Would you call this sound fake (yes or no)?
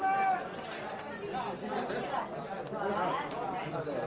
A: no